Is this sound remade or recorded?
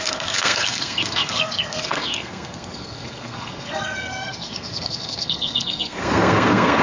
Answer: remade